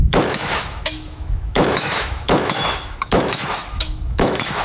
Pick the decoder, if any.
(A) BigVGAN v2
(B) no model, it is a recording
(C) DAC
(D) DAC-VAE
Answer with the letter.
D